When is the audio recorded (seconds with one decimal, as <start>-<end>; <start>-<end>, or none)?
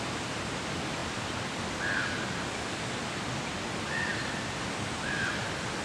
0.0-5.8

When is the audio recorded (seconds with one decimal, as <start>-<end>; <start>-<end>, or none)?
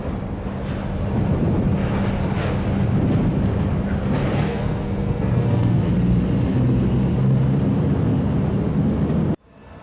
0.0-4.3; 5.9-9.8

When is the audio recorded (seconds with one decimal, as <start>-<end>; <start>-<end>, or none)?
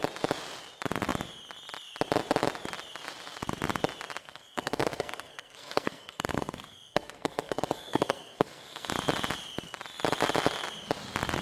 0.0-4.2; 8.9-11.4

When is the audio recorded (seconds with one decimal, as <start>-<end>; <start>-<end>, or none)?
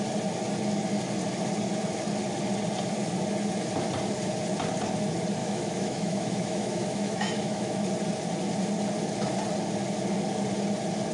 0.0-5.4; 7.9-11.1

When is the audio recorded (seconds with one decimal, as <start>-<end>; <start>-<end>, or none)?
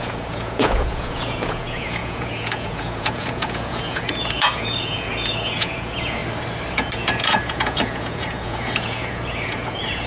6.2-6.7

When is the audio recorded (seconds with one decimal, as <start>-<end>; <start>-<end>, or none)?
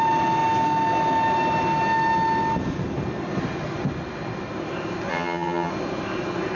0.0-5.1; 5.7-6.6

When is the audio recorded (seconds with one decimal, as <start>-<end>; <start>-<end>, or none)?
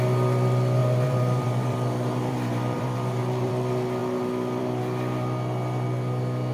0.0-0.8; 3.5-6.5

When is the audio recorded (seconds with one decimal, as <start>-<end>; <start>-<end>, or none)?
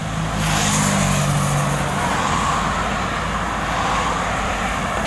0.0-5.1